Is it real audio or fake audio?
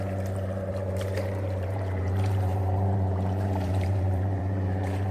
fake